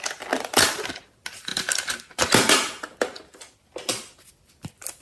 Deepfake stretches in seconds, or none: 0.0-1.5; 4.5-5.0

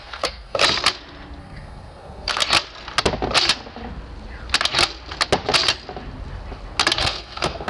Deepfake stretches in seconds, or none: 0.0-0.6; 1.4-2.4; 7.0-7.7

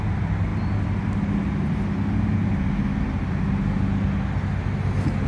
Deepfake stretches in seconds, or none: none

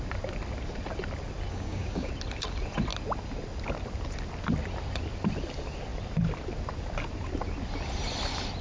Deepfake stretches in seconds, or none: 1.5-2.1

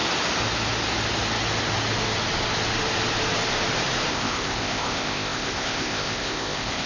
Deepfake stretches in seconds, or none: 4.1-6.9

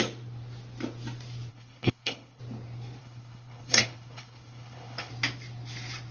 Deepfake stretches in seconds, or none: 1.5-2.4; 3.0-5.1